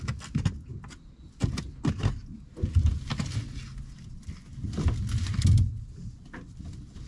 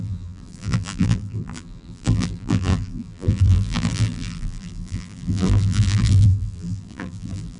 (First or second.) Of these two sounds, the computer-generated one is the second